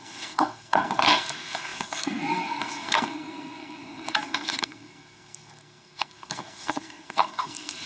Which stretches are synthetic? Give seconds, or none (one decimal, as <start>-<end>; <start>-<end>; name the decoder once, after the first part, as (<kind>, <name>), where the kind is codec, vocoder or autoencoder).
0.0-7.9 (codec, SNAC)